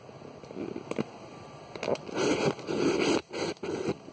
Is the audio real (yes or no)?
yes